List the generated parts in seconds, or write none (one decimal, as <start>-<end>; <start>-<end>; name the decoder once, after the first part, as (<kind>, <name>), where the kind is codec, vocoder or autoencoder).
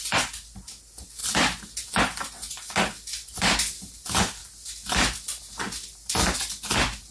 none